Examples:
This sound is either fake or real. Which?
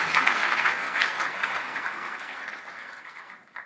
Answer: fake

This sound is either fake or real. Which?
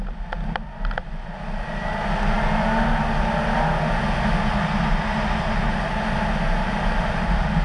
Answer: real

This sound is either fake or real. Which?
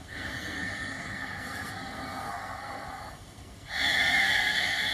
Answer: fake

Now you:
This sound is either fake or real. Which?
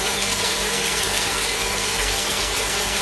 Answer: fake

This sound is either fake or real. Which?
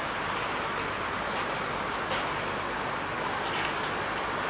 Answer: real